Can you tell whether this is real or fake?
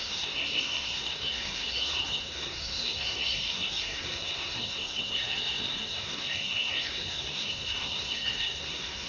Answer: fake